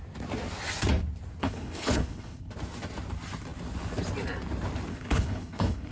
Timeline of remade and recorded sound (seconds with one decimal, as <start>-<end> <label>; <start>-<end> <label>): 0.0-1.4 recorded; 1.4-2.5 remade; 2.5-4.9 recorded; 4.9-5.9 remade